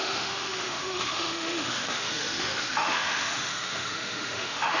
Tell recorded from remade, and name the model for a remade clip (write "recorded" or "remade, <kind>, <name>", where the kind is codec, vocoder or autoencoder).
remade, autoencoder, DAC-VAE